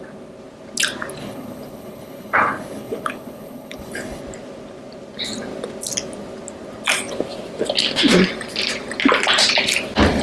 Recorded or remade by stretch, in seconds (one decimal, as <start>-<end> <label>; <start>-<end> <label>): 0.0-1.2 recorded; 1.2-4.2 remade; 4.2-10.2 recorded